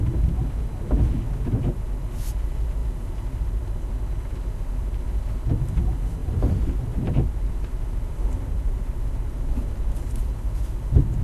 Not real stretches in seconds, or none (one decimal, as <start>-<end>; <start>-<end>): 6.2-9.6